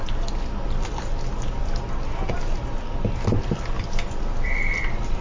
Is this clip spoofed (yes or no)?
no